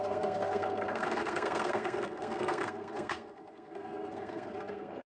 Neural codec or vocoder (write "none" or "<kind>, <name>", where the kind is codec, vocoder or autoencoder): codec, SNAC